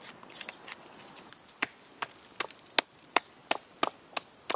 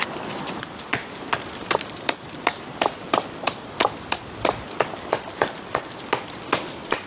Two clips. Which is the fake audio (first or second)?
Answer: second